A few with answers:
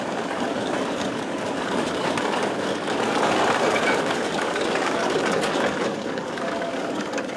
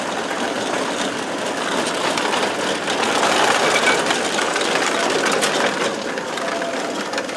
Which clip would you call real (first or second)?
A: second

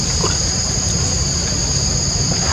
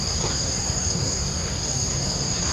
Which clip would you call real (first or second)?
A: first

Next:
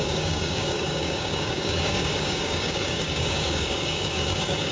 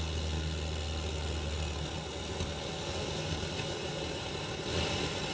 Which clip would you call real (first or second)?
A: second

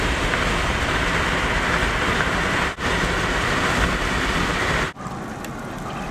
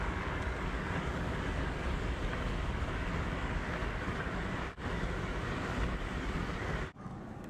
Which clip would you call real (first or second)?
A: first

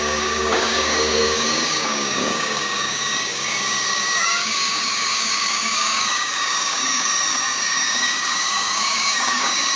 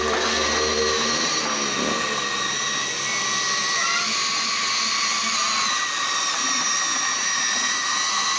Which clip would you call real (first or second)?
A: second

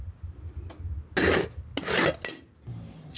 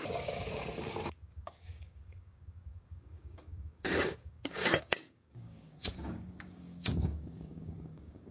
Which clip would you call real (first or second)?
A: first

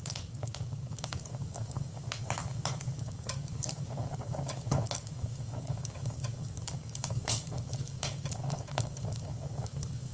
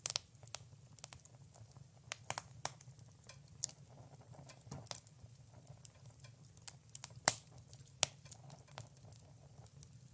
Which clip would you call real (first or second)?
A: second